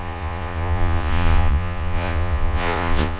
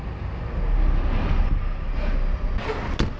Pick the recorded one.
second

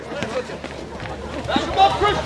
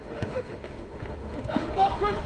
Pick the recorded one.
first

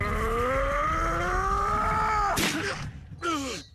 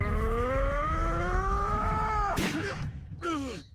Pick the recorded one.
first